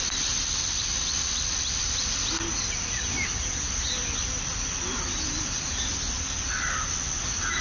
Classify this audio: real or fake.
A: real